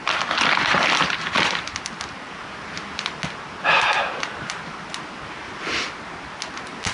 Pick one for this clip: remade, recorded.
recorded